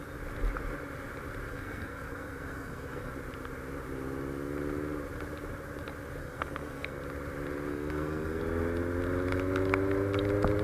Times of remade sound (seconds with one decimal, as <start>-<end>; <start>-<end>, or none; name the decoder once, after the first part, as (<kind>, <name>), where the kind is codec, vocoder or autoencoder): 1.5-3.1 (codec, SNAC); 6.2-7.0; 7.7-8.4